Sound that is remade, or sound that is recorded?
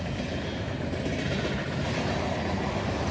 recorded